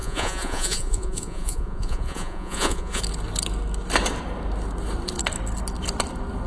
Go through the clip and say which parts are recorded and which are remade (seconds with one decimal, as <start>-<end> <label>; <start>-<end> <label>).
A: 0.0-3.0 remade; 3.0-6.5 recorded